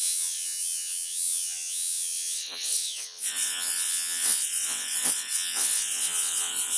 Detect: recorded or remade remade